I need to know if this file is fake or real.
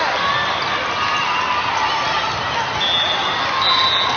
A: real